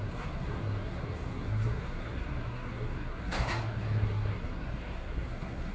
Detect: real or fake fake